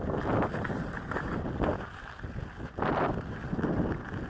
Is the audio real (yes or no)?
yes